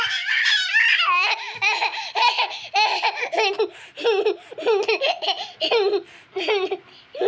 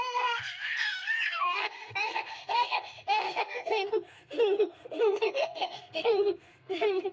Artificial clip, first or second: second